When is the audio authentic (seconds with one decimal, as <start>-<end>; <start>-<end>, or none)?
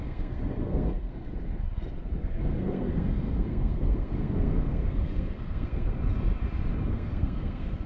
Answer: 1.3-2.2; 6.0-6.9